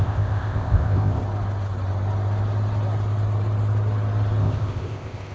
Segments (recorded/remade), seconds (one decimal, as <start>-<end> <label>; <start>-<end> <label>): 0.0-1.2 remade; 1.2-4.4 recorded; 4.4-5.3 remade